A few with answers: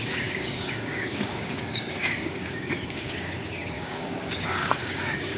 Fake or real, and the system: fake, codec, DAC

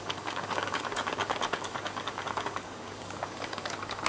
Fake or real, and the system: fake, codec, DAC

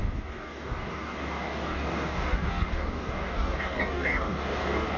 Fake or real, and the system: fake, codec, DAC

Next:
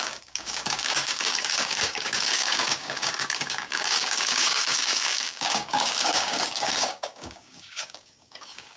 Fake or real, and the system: fake, codec, DAC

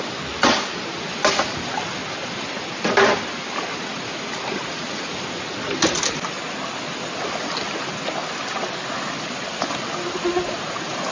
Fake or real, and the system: real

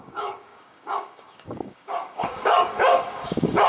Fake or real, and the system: fake, codec, DAC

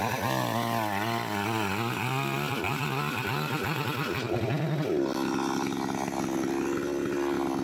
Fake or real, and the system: real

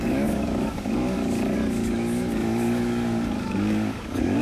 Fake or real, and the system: fake, codec, DAC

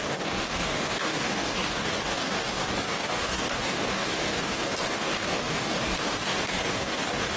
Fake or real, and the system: fake, codec, DAC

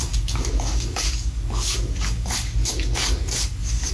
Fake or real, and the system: fake, codec, DAC